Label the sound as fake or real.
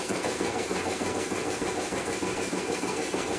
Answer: fake